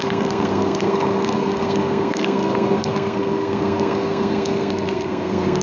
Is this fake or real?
fake